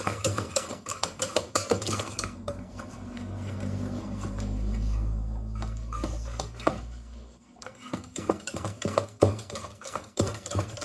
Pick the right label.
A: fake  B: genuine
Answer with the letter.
A